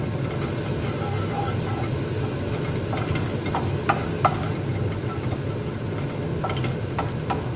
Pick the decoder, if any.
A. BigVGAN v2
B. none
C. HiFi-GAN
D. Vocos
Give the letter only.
B